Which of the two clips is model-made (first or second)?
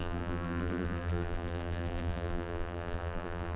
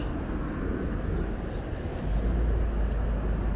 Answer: first